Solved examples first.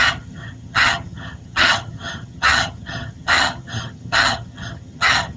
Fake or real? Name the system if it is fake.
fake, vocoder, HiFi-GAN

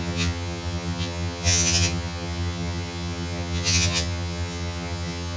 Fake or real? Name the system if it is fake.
fake, vocoder, HiFi-GAN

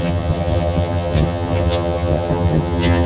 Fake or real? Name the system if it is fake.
fake, vocoder, HiFi-GAN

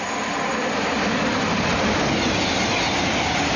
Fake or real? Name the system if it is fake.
real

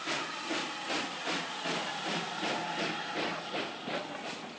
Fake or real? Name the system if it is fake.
real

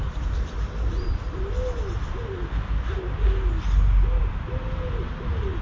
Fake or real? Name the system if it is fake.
real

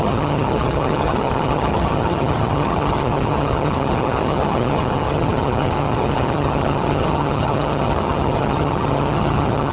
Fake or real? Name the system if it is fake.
fake, vocoder, HiFi-GAN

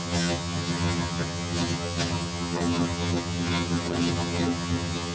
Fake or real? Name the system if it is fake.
fake, vocoder, HiFi-GAN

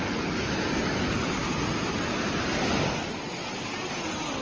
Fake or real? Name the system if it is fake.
real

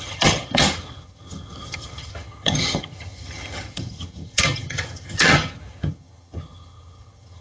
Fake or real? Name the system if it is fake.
fake, vocoder, HiFi-GAN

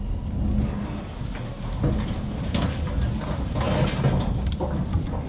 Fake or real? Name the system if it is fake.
real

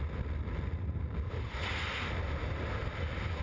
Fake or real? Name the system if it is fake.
real